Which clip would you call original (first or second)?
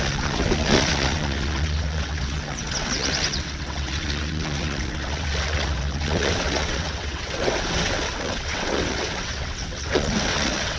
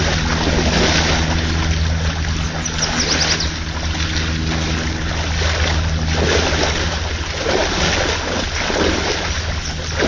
second